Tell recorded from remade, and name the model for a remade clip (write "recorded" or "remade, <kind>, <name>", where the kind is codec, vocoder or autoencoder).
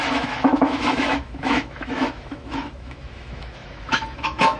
remade, autoencoder, DAC-VAE